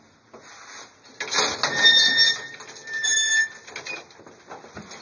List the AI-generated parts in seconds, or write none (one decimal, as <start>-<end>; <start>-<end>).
none

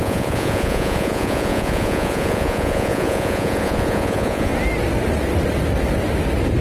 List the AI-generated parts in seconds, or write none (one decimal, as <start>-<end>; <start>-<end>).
0.0-4.5

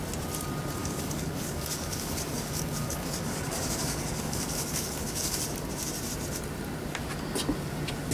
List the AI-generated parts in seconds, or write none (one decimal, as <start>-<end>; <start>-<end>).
0.8-5.4

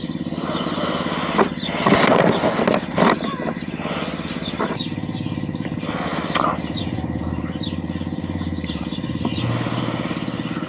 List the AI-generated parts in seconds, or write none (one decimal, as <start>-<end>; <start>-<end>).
none

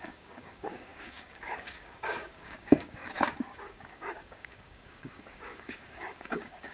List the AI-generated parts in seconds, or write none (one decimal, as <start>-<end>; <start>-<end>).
0.0-6.7

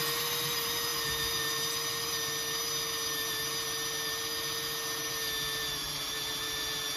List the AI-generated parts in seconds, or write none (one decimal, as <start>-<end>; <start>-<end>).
none

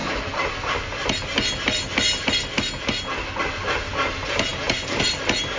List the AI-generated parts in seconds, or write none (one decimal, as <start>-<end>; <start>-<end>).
4.5-5.6